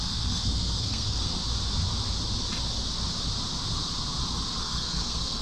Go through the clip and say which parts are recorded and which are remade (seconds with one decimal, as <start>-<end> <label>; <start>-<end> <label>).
0.0-1.4 remade; 1.4-4.6 recorded; 4.6-5.4 remade